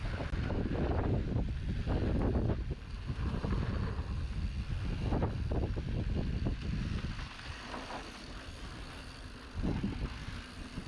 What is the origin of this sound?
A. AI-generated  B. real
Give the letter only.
B